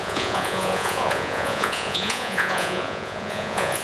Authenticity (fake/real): fake